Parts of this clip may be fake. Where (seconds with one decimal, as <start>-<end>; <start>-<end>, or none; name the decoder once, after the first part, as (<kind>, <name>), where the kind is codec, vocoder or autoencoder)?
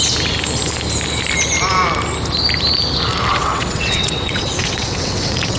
3.3-5.6 (vocoder, WaveNeXt)